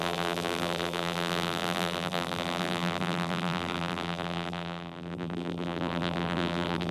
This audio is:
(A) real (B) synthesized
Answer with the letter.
B